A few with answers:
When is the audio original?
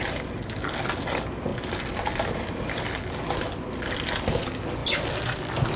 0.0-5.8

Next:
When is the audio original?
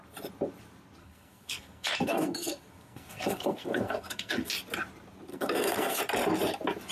0.0-1.0; 4.5-5.3; 6.0-6.9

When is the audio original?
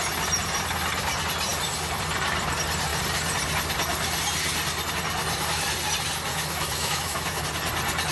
0.0-6.3; 7.4-8.1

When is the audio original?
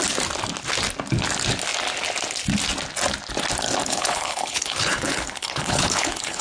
0.0-3.8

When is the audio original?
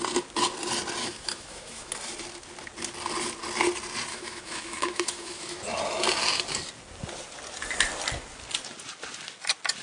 0.0-1.0; 1.9-4.1; 5.6-9.8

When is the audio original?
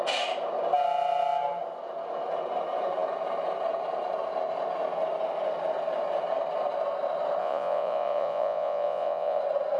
0.0-7.4; 9.4-9.8